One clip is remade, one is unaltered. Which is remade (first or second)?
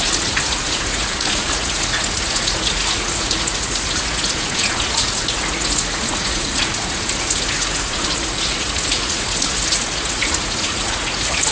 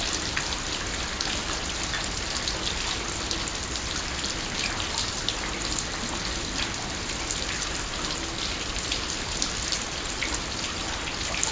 first